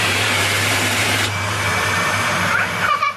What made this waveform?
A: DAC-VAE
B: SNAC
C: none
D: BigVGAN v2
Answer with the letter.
D